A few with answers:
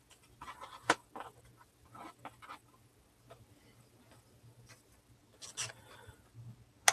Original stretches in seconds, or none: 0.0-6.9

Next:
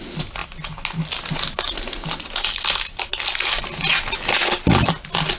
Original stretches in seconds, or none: 0.0-5.4

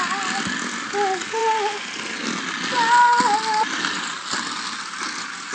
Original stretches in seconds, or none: 0.0-5.5

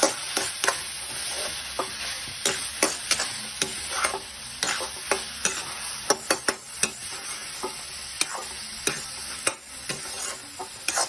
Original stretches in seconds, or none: 0.6-3.7; 4.2-11.1

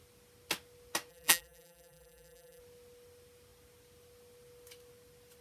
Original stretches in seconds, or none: 0.0-1.1; 2.6-5.4

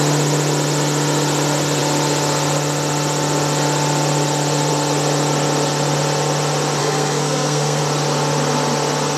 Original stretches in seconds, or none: 0.0-6.8; 7.8-9.2